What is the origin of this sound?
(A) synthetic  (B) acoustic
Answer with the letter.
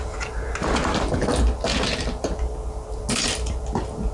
B